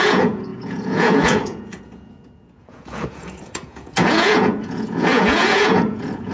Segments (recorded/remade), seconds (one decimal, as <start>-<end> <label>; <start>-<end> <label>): 0.0-6.3 remade